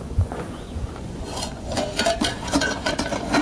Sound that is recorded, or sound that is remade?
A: remade